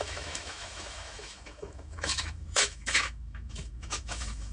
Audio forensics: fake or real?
fake